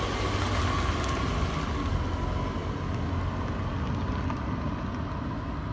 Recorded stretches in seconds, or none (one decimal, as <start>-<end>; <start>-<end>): 0.0-5.7